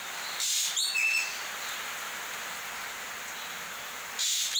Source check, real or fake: real